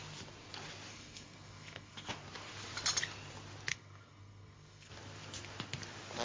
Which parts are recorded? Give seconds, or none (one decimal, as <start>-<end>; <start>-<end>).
0.0-0.9; 2.1-3.7; 4.9-6.2